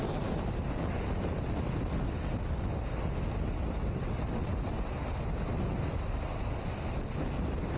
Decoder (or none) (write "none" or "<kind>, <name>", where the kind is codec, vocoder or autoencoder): none